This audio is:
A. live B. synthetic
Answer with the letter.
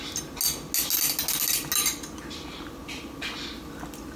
A